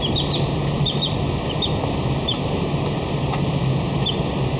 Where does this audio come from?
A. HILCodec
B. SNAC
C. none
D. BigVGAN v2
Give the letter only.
C